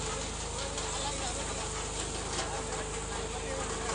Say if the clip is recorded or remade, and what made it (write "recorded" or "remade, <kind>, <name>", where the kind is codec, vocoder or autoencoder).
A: recorded